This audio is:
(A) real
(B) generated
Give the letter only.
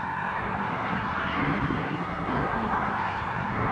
B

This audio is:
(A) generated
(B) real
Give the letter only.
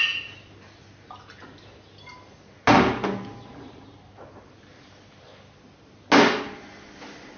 B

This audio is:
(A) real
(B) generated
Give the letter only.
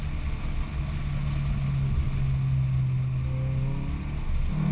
A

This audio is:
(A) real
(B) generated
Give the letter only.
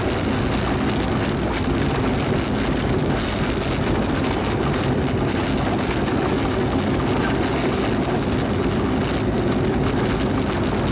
A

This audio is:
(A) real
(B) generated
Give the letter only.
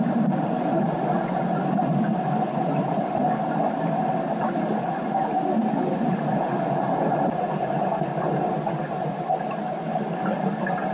A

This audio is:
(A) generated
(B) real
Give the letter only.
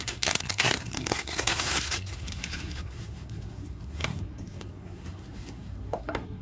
A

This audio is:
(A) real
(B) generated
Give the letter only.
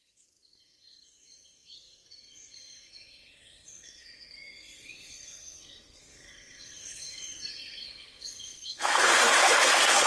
B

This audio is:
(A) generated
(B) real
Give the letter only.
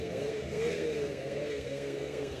A